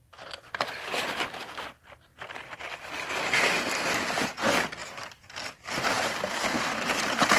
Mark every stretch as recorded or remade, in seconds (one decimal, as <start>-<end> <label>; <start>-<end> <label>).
0.0-7.4 recorded